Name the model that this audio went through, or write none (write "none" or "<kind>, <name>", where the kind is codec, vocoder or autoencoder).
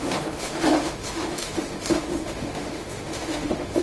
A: autoencoder, DAC-VAE